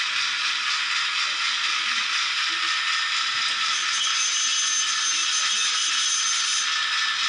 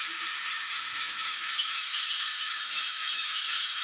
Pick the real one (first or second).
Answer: first